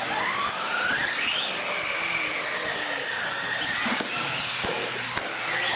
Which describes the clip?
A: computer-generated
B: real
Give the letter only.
B